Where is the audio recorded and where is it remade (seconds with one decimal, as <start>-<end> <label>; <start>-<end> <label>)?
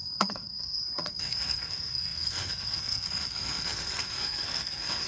0.0-5.1 remade